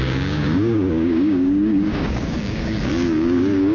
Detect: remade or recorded remade